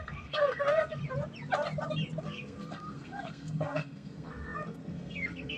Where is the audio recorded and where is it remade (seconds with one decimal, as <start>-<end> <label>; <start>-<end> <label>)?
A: 0.0-1.0 remade; 1.0-2.2 recorded; 2.2-5.6 remade